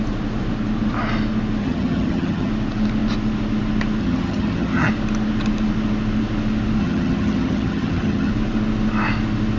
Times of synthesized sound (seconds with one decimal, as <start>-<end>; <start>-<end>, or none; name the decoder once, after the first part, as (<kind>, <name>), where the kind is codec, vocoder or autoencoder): 1.6-2.5 (vocoder, HiFi-GAN); 4.0-4.9; 6.8-8.3